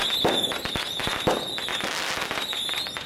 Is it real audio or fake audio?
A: real